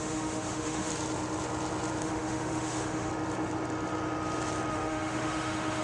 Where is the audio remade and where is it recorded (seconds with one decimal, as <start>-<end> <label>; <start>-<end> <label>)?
0.0-0.9 remade; 0.9-2.0 recorded; 2.0-3.1 remade; 3.1-4.7 recorded; 4.7-5.8 remade